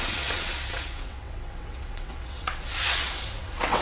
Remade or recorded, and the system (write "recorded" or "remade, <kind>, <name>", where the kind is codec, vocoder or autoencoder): remade, vocoder, WaveNeXt